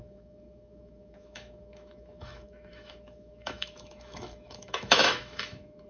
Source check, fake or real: fake